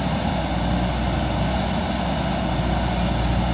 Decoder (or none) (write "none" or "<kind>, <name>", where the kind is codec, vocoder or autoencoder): none